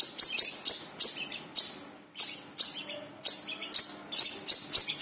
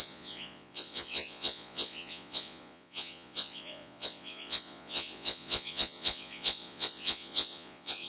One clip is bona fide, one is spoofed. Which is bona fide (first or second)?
first